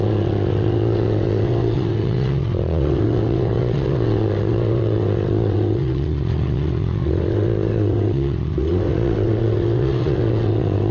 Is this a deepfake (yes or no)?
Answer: yes